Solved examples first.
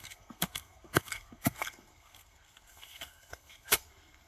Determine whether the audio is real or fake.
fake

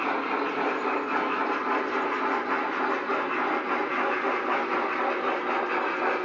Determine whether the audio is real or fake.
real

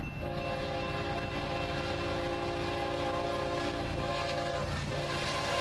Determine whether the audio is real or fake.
real